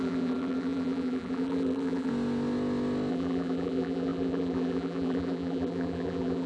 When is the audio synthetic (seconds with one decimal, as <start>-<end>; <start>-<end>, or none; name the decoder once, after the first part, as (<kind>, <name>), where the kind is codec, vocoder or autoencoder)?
0.0-2.1 (vocoder, BigVGAN v2); 3.1-6.5